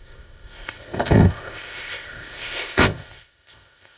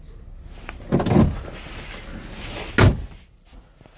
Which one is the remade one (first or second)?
first